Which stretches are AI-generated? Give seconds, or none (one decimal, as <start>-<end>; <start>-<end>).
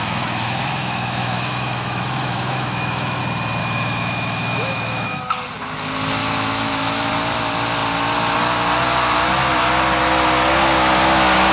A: 0.0-3.2; 3.6-5.2; 6.2-7.1